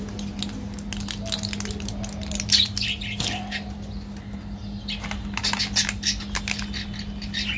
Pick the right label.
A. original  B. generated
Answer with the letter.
A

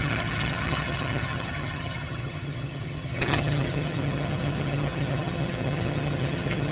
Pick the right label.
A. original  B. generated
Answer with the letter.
B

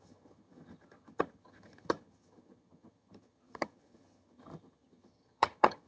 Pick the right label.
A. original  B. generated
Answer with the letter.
B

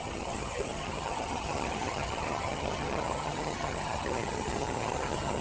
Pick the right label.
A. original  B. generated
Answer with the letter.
B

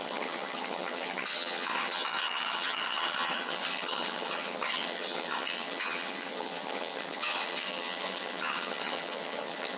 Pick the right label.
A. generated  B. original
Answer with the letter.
A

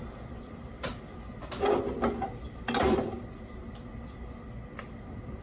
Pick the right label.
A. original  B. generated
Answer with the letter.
A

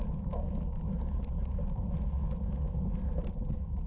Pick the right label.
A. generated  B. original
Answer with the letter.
B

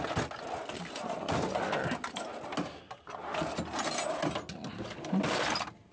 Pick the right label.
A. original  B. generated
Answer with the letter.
A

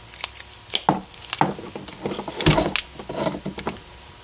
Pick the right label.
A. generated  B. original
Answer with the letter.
B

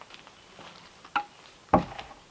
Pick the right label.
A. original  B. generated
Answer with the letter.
A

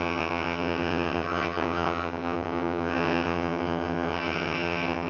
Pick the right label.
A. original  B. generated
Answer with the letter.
B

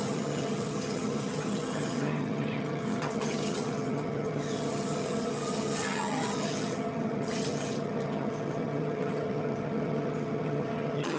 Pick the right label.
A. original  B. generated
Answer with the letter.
B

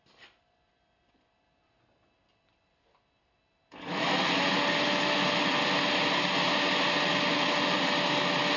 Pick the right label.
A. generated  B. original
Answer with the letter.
B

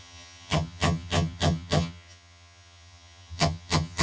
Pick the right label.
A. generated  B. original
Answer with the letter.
A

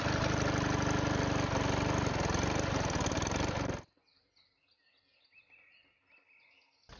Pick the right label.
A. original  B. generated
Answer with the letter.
A